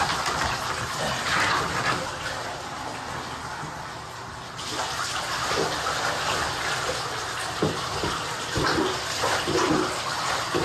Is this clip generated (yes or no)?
no